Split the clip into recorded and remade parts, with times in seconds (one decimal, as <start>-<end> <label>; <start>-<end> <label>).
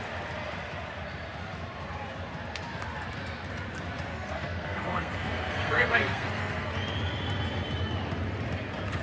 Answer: 0.0-4.1 recorded; 4.1-6.7 remade; 6.7-9.0 recorded